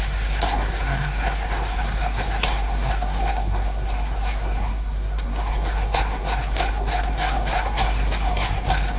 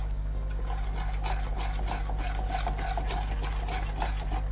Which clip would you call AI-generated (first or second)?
first